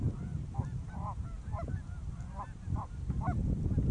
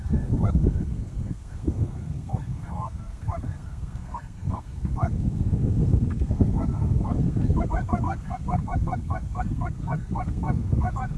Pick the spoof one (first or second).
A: second